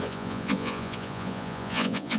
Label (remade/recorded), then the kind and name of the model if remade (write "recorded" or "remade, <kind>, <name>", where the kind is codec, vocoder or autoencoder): remade, vocoder, Vocos